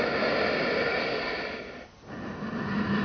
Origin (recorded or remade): recorded